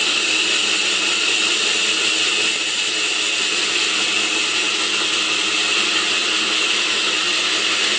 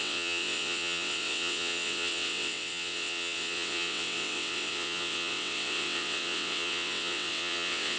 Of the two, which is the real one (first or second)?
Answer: first